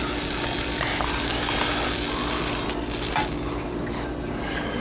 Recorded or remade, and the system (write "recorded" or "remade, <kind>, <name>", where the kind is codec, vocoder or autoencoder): recorded